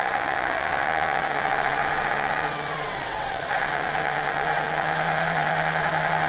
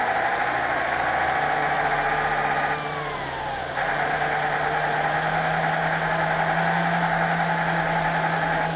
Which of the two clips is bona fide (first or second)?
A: second